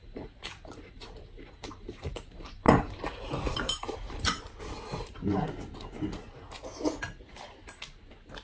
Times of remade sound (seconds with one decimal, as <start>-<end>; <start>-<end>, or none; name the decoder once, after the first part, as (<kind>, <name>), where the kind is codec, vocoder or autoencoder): 0.0-4.4 (vocoder, BigVGAN v2)